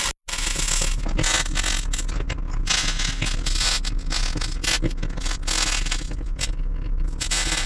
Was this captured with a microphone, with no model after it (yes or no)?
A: yes